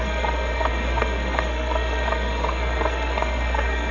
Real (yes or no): no